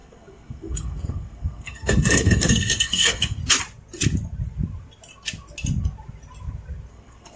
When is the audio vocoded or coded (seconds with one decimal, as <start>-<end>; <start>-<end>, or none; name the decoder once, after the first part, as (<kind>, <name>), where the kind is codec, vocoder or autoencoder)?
0.0-3.4 (codec, SNAC); 6.9-7.4